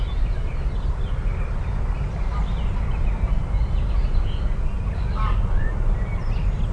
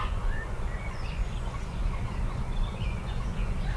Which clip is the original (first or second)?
first